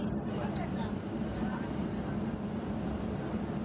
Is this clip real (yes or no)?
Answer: yes